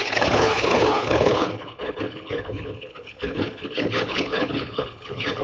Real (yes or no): no